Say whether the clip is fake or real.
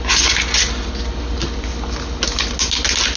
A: real